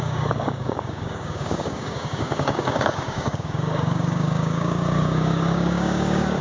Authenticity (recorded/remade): remade